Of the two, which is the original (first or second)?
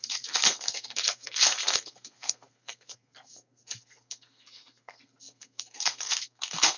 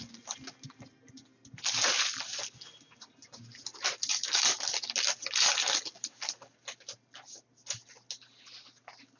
second